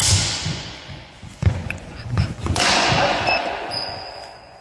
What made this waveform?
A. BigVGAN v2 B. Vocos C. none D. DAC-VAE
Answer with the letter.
B